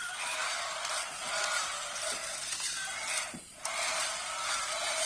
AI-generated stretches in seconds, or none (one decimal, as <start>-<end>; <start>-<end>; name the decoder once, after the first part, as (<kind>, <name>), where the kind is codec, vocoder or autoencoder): 0.0-0.4 (vocoder, BigVGAN v2); 1.1-2.2; 4.2-5.1